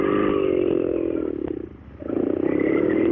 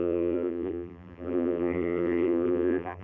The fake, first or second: second